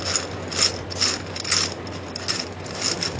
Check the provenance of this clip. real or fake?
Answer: real